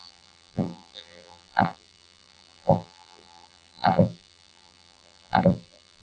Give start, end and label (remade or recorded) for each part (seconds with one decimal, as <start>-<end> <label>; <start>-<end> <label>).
0.0-6.0 remade